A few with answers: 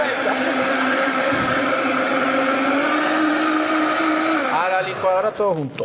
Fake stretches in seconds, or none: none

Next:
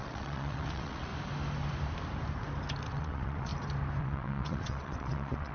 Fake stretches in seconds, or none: 0.0-1.1 (vocoder, WaveNeXt); 2.9-3.5; 4.0-5.5

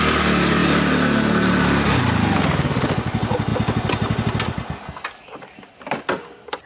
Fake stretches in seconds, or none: none

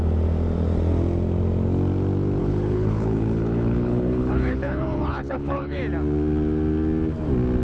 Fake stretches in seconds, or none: 2.4-5.8 (codec, HILCodec)

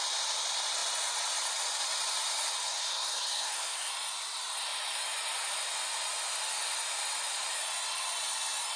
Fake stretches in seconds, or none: 2.7-3.9 (codec, SNAC)

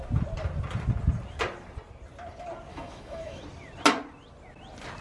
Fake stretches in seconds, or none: 2.7-3.4 (autoencoder, DAC-VAE)

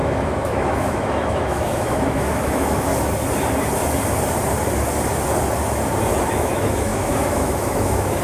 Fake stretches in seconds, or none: 0.0-2.9 (autoencoder, DAC-VAE); 6.2-8.2

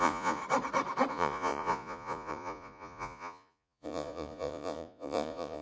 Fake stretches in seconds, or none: 0.0-0.4 (vocoder, Vocos); 1.1-5.6